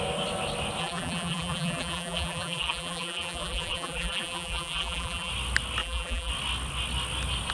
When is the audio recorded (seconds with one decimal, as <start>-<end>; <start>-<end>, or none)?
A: 0.0-0.8; 5.3-5.8; 6.3-7.5